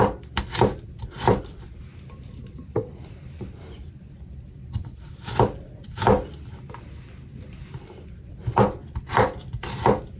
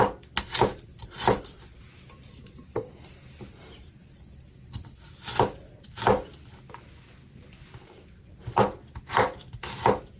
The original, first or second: second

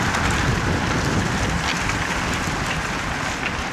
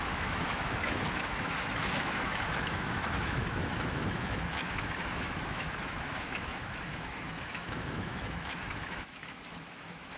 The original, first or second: first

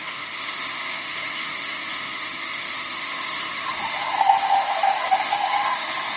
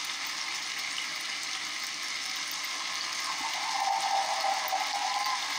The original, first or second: second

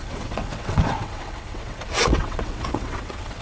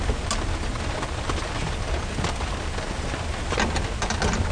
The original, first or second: second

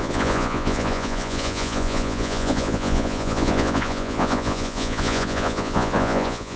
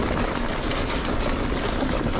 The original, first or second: second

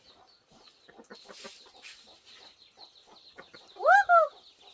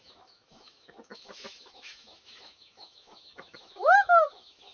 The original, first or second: first